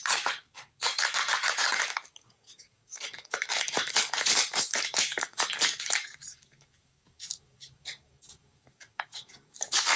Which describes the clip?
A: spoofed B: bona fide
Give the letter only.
A